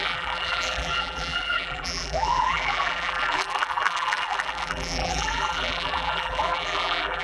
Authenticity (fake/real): fake